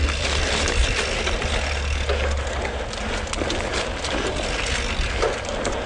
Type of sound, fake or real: real